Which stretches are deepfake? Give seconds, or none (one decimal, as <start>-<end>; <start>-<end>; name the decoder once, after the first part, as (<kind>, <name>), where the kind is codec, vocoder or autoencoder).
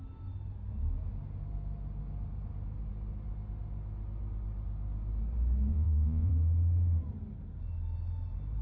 5.7-6.3 (vocoder, Vocos)